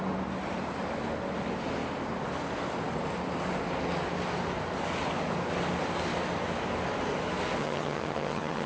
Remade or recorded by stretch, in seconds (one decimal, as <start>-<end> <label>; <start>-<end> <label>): 0.0-7.6 recorded; 7.6-8.7 remade